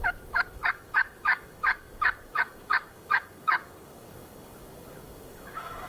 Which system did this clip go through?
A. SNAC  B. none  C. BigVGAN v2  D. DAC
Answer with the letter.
D